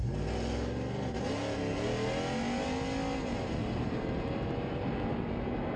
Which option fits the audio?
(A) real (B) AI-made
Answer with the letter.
A